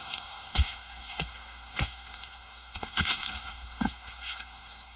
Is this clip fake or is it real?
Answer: fake